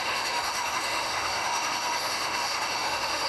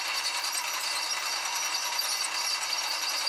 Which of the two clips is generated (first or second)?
first